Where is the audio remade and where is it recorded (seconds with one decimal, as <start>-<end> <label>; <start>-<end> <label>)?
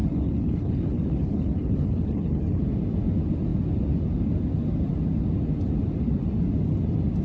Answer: 0.0-2.6 remade; 2.6-7.2 recorded